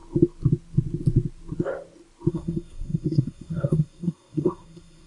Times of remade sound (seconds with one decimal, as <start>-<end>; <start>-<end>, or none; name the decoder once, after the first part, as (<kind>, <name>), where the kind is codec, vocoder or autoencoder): 2.3-5.1 (codec, SNAC)